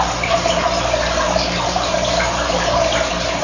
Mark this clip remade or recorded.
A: remade